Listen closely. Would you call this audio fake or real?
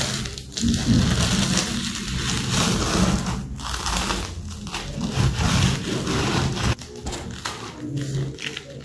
real